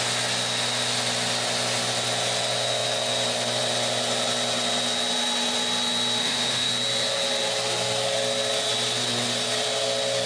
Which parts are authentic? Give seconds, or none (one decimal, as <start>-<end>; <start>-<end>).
0.0-6.2; 6.7-10.3